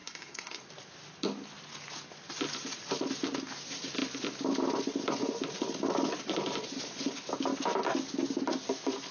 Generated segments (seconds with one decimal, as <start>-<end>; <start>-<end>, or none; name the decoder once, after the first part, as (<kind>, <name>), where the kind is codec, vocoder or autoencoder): 0.0-0.6 (codec, SNAC)

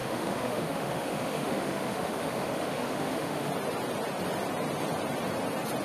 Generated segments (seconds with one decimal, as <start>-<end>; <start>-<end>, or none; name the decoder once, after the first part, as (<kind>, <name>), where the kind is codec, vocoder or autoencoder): 0.0-3.5 (autoencoder, DAC-VAE)

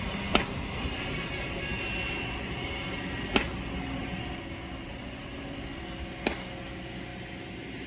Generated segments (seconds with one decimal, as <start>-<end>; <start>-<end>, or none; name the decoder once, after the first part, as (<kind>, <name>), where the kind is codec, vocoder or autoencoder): none

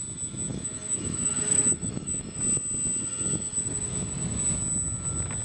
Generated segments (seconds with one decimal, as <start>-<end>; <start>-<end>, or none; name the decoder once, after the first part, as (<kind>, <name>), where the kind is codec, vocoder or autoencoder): 0.5-2.4 (autoencoder, DAC-VAE)

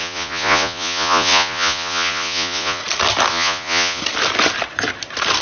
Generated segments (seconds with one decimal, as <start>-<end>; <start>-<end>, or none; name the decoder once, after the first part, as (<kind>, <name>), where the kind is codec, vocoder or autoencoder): 0.0-2.8 (vocoder, Vocos); 3.3-4.0

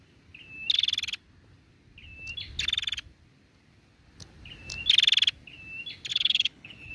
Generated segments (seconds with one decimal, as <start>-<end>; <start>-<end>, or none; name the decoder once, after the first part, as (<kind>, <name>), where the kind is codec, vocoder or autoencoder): 6.1-6.9 (codec, HILCodec)

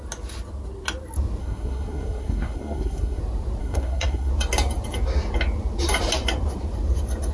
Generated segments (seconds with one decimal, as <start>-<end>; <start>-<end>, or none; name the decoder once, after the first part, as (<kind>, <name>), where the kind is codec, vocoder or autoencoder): 1.4-3.2 (codec, SNAC); 3.6-4.3